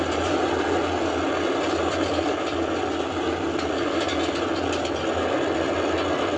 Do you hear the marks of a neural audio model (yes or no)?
no